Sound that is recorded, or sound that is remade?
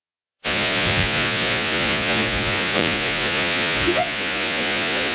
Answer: remade